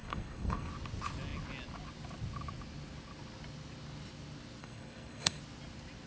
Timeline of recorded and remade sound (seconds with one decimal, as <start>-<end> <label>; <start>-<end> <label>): 0.0-0.7 remade; 0.7-4.6 recorded; 4.6-5.4 remade; 5.4-6.1 recorded